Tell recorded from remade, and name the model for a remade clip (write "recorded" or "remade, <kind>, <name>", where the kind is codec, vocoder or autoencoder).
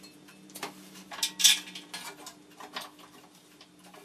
recorded